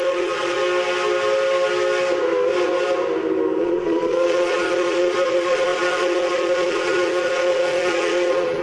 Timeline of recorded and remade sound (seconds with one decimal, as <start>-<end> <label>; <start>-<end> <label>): 0.0-0.6 remade; 0.6-3.6 recorded; 3.6-8.6 remade